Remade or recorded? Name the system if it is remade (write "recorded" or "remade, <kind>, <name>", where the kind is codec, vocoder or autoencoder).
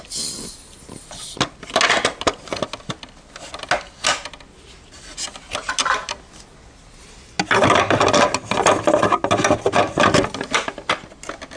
recorded